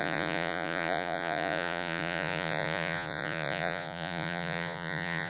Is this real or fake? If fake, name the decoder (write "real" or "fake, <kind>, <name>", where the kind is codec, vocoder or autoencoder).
fake, vocoder, Vocos